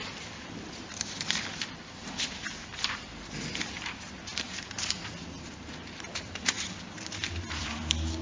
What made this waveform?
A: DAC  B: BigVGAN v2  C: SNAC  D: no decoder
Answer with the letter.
B